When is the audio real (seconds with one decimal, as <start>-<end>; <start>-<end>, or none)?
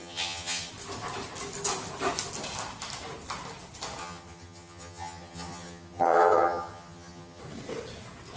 0.7-4.0; 7.4-8.4